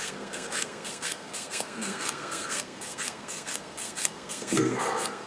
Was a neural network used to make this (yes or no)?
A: yes